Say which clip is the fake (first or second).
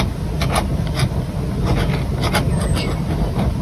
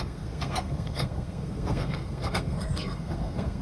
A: second